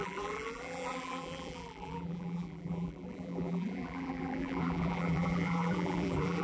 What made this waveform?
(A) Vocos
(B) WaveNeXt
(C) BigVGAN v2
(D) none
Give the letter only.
C